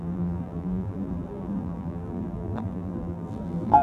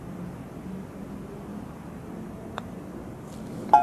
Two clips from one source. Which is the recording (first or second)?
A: second